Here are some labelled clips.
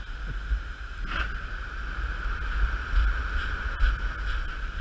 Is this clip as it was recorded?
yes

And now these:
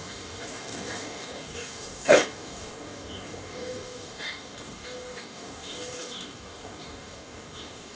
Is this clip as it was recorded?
no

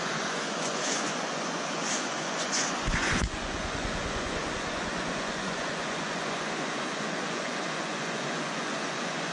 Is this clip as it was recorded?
no